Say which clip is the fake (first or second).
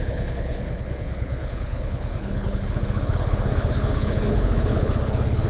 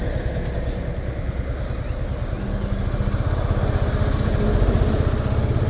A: first